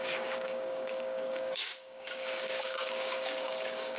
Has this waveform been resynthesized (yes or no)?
yes